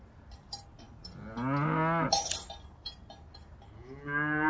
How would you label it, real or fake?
real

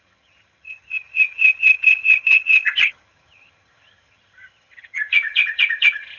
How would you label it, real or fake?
fake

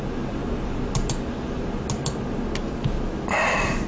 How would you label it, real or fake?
real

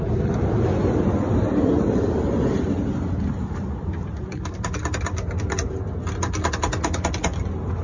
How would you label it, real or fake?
real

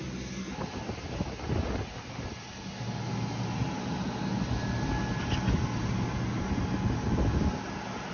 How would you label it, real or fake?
real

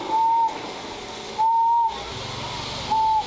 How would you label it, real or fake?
real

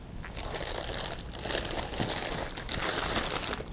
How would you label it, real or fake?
real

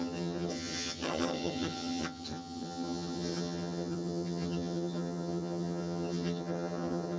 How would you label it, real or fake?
fake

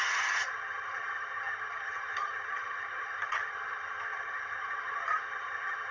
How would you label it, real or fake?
fake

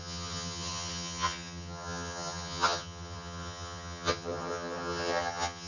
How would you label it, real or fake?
fake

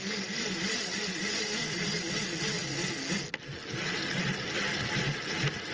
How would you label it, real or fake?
real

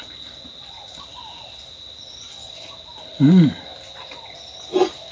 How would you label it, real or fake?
real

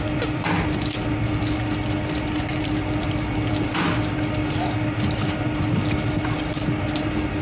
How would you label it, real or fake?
real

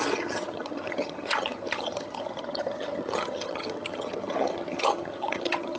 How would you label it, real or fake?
fake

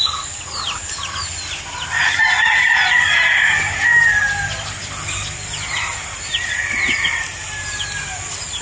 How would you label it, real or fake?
real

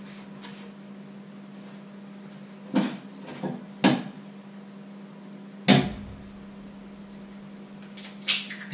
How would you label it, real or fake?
real